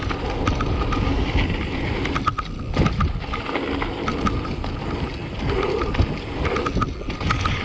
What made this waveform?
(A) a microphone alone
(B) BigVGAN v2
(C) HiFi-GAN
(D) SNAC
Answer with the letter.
A